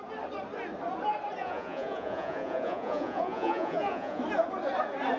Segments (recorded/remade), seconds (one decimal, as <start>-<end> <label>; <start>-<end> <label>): 0.0-1.4 recorded; 1.4-4.2 remade; 4.2-5.2 recorded